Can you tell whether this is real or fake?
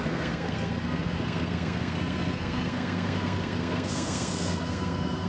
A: fake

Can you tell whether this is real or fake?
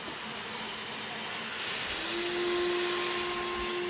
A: real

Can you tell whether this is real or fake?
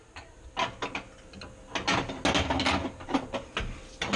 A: real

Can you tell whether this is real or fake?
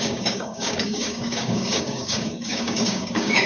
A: fake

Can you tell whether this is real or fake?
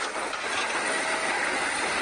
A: real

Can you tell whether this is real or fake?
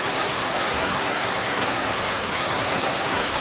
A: fake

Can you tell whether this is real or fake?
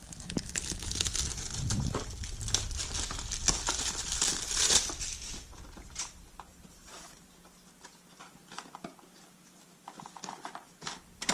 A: real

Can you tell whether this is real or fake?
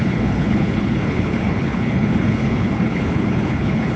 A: fake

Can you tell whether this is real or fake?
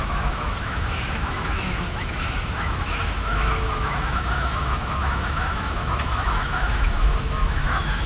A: fake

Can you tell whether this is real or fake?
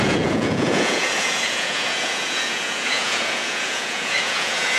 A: fake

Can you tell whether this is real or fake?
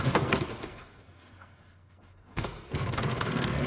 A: fake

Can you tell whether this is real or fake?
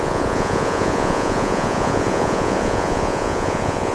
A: fake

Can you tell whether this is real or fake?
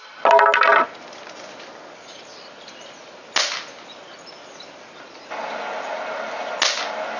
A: real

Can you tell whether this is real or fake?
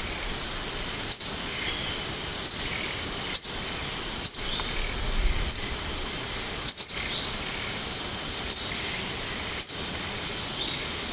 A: real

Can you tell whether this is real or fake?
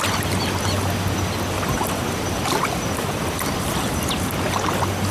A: real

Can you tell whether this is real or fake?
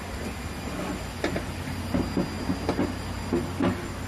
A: real